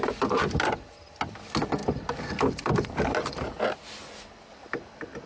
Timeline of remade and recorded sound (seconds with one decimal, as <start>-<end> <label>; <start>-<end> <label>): 0.0-5.3 recorded